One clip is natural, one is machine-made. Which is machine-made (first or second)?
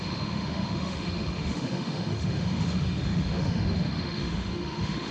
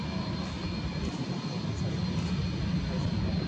first